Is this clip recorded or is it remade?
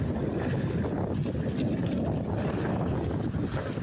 recorded